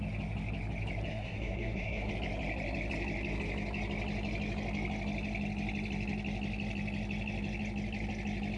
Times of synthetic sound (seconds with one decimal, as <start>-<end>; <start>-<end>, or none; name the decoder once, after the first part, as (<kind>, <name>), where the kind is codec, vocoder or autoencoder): 1.1-2.1 (codec, SNAC)